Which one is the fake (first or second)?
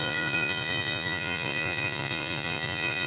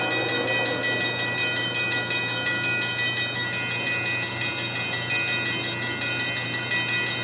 first